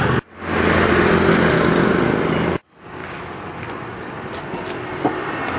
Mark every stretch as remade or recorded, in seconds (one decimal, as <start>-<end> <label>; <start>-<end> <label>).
0.0-5.6 recorded